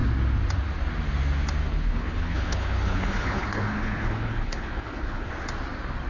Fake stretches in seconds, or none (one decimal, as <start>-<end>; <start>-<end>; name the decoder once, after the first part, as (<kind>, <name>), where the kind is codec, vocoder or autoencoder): 1.6-5.3 (codec, HILCodec)